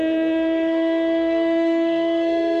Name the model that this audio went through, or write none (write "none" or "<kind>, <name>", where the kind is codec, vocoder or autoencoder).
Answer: codec, SNAC